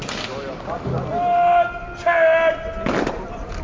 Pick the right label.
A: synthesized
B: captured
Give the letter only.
B